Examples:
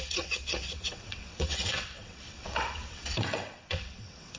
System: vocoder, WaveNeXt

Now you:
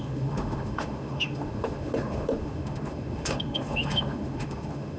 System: autoencoder, DAC-VAE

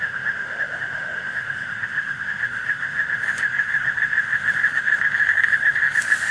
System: autoencoder, DAC-VAE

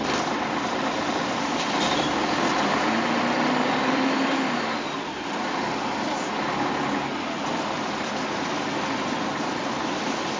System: none